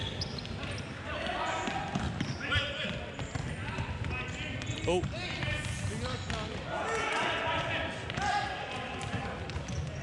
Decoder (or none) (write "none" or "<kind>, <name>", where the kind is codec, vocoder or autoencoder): none